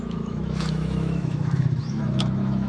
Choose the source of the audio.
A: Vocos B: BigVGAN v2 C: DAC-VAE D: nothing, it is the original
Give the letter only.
C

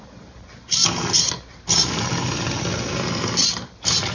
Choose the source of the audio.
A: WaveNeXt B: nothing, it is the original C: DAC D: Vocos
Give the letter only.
B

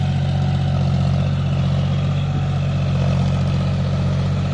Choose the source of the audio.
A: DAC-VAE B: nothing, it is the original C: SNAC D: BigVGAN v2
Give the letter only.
B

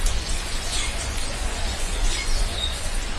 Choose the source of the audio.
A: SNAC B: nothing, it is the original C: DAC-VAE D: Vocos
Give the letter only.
D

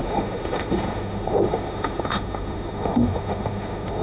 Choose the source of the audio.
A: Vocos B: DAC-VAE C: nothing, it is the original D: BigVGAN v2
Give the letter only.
B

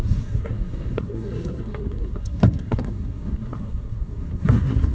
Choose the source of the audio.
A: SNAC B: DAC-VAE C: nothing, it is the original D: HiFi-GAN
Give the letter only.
A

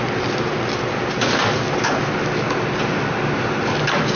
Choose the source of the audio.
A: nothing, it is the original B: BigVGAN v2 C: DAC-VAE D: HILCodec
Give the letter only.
A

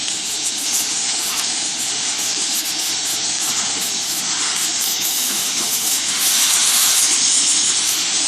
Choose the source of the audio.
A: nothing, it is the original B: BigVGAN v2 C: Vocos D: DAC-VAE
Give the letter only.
D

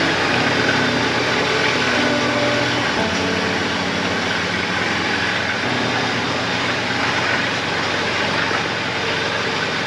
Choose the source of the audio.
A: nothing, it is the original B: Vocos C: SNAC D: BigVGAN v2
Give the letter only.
A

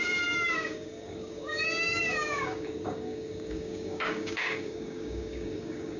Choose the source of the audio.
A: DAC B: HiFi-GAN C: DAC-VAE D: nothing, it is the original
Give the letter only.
A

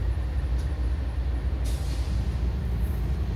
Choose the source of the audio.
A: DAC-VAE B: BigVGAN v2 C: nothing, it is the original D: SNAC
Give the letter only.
C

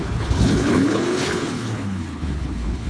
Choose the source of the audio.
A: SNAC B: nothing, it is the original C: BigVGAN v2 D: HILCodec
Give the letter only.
D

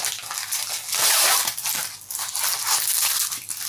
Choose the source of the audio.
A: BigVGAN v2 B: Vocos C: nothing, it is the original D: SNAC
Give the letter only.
C